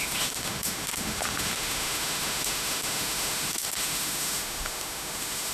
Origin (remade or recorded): remade